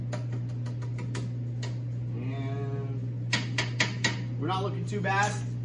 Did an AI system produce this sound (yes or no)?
no